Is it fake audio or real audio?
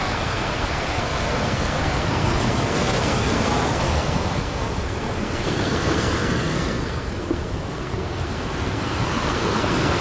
fake